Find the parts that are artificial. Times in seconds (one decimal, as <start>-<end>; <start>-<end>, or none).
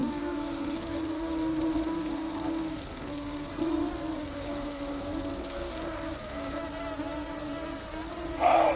0.0-3.5; 4.1-6.6